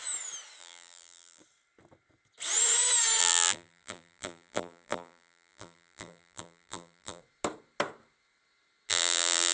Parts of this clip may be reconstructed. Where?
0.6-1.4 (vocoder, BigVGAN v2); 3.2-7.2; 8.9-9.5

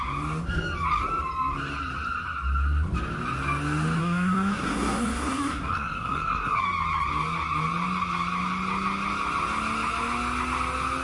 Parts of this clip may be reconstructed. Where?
4.0-6.6 (codec, SNAC)

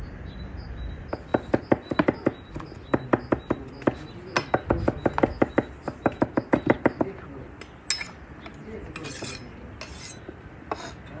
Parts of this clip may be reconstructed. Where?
none

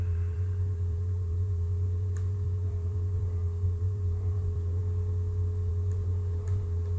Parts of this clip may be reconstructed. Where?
0.0-4.8 (vocoder, BigVGAN v2); 5.7-7.0

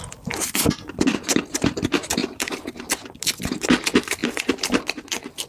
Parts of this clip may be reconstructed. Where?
2.2-2.9 (vocoder, BigVGAN v2); 4.2-4.8

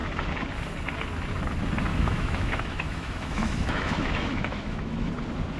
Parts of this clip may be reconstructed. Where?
1.9-5.1 (autoencoder, DAC-VAE)